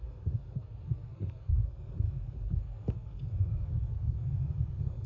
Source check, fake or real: fake